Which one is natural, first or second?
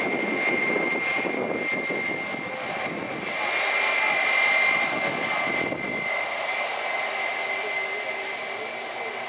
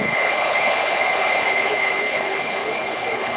first